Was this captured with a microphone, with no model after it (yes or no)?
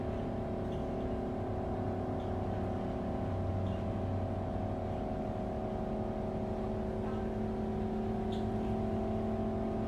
yes